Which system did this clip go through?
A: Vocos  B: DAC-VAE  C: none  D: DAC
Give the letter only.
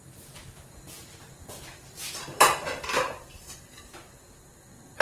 C